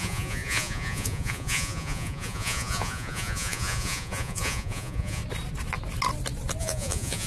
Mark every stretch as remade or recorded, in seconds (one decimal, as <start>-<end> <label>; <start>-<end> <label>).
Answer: 0.0-5.2 remade; 5.2-6.6 recorded; 6.6-7.3 remade